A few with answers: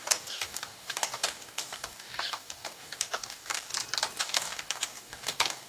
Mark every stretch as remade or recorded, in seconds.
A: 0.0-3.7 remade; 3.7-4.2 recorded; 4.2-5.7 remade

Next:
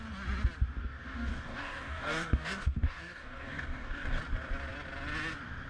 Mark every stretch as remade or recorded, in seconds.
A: 0.0-0.8 recorded; 0.8-4.2 remade; 4.2-5.7 recorded